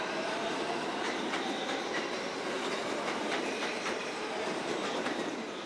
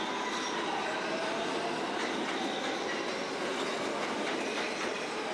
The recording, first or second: second